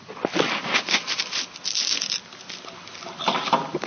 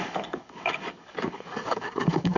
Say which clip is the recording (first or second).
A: first